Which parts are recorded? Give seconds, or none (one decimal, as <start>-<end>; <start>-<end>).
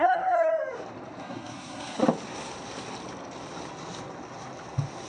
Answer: 0.5-1.2; 2.0-5.1